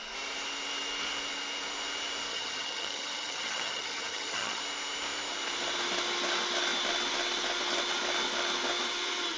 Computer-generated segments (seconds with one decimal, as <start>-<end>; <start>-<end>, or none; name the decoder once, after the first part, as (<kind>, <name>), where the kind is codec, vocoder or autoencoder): 2.3-4.6 (vocoder, HiFi-GAN)